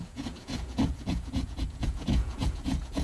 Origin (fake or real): fake